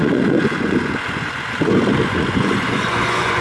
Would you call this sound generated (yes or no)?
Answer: yes